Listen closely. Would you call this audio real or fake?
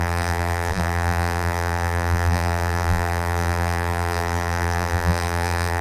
fake